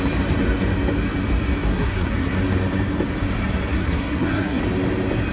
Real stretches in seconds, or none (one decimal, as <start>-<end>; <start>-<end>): 0.0-1.7; 2.4-3.7; 4.6-5.3